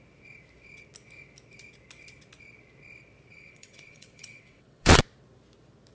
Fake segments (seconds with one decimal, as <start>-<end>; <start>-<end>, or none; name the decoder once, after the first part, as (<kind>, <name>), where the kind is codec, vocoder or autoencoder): 3.3-5.0 (vocoder, WaveNeXt)